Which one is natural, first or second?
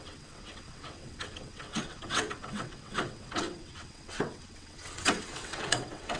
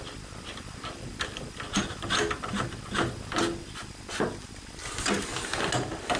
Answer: second